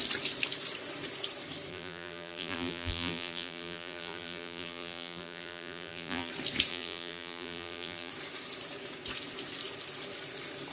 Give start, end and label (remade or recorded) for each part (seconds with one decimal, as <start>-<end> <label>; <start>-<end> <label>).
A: 0.0-1.7 recorded; 1.7-6.3 remade; 6.3-6.7 recorded; 6.7-8.1 remade; 8.1-10.7 recorded